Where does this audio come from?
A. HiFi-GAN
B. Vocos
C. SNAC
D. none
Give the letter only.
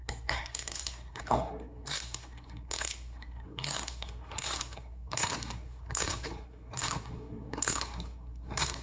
C